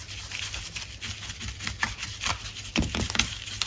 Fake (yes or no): no